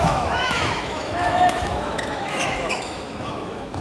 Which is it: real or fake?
fake